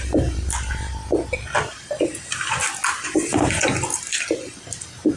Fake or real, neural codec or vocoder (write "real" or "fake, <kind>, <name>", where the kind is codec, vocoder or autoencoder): real